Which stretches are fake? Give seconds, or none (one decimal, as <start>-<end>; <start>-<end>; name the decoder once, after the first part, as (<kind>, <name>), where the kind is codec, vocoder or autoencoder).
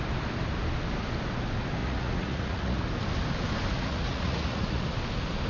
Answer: 1.8-2.9 (vocoder, Vocos); 3.7-4.8